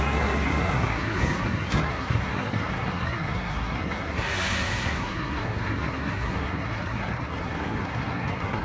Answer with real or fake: fake